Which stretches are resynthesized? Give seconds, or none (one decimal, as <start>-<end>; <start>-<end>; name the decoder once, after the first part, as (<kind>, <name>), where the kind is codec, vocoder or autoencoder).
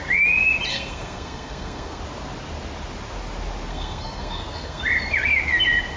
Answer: 0.7-2.0 (codec, SNAC); 3.7-4.8